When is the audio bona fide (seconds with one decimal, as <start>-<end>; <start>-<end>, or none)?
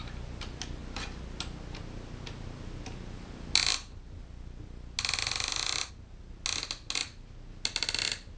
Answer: 0.0-5.2; 5.9-8.4